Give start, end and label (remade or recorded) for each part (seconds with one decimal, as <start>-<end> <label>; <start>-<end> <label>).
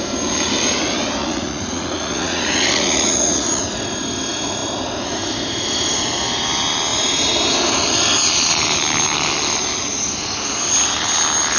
0.0-1.2 recorded; 1.2-3.6 remade; 3.6-11.6 recorded